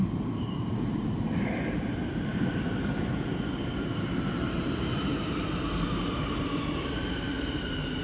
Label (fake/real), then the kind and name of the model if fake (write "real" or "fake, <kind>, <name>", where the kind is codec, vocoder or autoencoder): fake, vocoder, BigVGAN v2